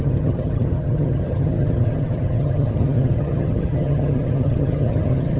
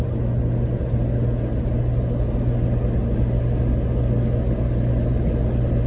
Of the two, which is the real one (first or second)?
second